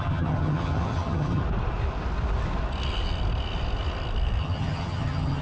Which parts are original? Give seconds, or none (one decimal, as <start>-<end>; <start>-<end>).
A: 1.4-4.4